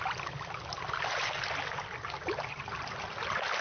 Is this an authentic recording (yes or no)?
yes